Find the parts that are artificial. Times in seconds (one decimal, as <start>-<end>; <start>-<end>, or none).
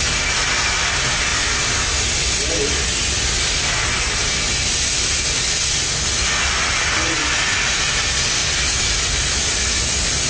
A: none